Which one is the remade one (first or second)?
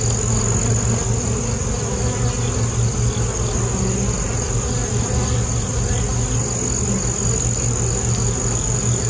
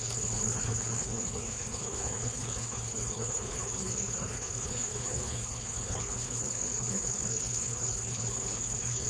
second